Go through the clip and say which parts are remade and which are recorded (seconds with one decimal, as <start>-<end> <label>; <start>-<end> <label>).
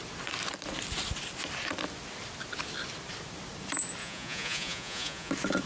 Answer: 0.0-4.0 recorded; 4.0-5.3 remade; 5.3-5.7 recorded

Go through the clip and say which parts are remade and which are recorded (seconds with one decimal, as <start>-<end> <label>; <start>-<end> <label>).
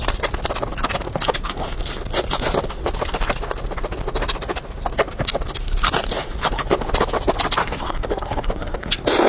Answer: 0.0-7.6 recorded; 7.6-8.9 remade; 8.9-9.3 recorded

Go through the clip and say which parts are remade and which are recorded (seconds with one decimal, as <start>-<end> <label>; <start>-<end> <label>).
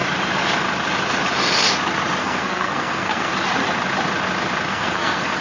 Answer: 0.0-2.2 recorded; 2.2-3.3 remade; 3.3-4.7 recorded; 4.7-5.4 remade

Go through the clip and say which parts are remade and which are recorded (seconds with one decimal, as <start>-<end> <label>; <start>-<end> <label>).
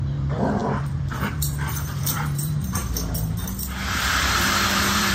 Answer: 0.0-2.8 remade; 2.8-4.2 recorded; 4.2-5.1 remade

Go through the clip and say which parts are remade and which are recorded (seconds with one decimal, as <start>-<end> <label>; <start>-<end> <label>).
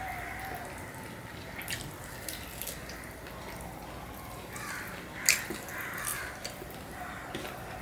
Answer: 0.0-6.1 recorded; 6.1-7.3 remade; 7.3-7.8 recorded